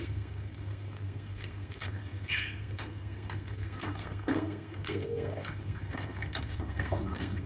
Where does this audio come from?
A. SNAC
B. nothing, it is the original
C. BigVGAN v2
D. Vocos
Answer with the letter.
A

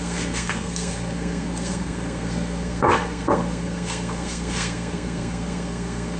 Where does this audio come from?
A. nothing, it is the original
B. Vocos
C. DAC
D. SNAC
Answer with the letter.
D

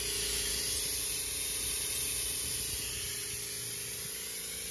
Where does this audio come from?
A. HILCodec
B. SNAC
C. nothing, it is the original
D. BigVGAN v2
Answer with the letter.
C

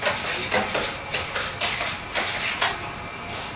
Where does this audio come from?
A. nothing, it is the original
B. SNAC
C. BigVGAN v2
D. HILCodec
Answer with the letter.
A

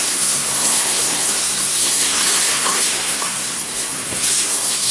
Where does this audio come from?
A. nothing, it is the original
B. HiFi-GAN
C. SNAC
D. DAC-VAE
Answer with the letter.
C